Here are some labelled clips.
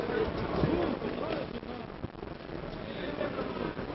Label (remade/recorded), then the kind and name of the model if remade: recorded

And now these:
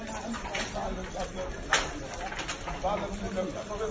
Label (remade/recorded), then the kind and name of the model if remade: recorded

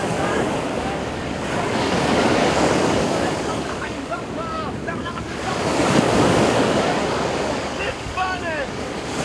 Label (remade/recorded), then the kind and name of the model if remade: remade, codec, DAC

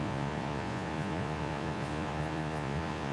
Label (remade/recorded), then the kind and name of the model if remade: remade, vocoder, Vocos